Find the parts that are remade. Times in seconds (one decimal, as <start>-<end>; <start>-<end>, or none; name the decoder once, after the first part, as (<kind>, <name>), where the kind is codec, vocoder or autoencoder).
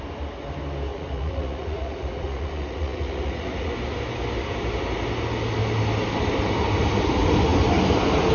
0.9-3.7 (vocoder, Vocos)